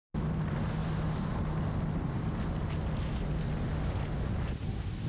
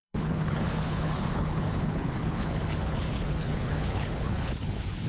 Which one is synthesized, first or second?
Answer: second